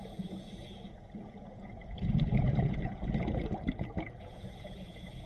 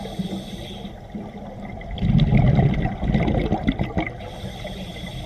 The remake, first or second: first